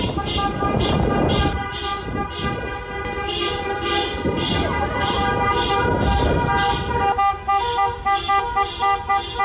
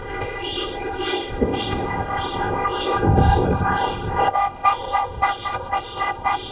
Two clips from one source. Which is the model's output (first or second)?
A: second